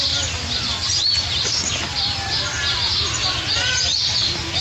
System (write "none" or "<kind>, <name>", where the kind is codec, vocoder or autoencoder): none